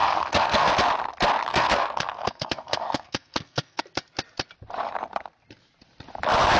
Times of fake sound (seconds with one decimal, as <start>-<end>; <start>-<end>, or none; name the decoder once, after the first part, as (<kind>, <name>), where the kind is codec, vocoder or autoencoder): 0.0-0.7 (codec, SNAC); 1.5-3.8